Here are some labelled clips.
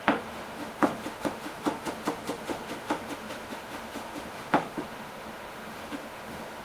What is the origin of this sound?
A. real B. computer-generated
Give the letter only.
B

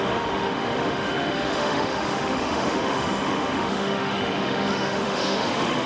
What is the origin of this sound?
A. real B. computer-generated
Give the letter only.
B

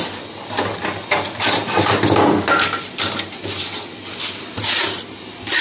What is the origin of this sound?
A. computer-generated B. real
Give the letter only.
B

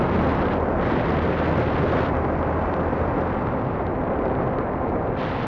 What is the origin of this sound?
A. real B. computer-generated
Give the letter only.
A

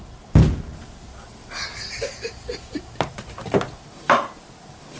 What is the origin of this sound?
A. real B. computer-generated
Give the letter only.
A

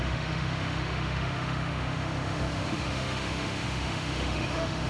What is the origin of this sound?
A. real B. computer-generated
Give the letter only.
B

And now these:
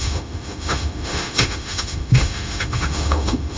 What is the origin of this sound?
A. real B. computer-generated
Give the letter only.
B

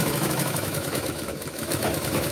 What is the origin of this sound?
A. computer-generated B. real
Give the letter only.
A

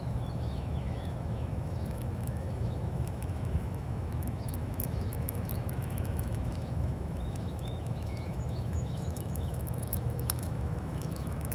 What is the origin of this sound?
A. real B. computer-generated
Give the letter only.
B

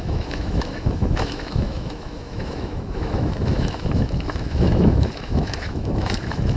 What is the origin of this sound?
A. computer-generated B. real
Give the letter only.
A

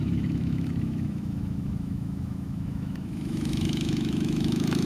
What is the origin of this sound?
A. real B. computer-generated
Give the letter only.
B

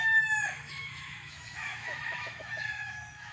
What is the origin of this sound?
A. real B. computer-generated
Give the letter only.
B